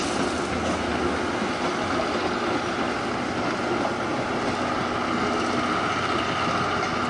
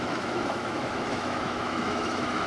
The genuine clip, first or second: first